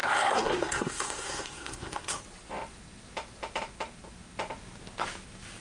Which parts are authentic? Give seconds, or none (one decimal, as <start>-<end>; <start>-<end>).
2.2-5.6